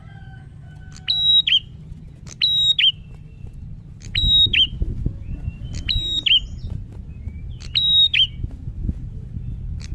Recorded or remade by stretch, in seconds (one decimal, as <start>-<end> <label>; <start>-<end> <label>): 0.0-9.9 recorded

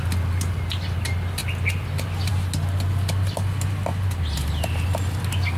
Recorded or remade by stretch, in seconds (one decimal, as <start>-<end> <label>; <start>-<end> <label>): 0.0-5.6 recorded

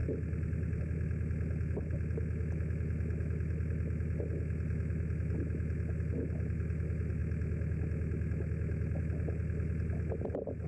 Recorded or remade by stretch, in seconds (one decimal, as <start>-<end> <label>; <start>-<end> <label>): 0.0-10.7 recorded

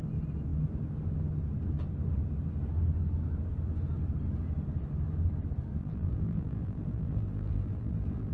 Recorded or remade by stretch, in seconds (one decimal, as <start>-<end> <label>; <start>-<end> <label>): 0.0-5.8 recorded; 5.8-8.3 remade